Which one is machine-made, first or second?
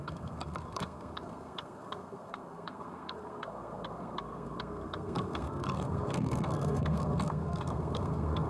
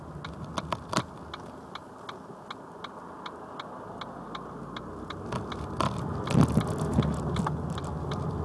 first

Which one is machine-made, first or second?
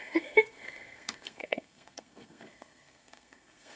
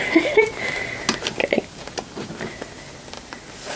first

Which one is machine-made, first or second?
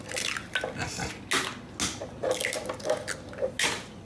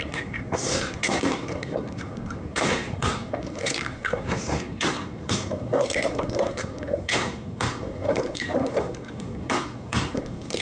second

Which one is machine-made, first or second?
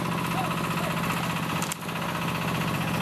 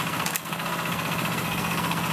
second